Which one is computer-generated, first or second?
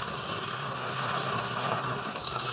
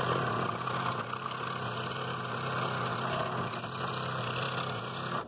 first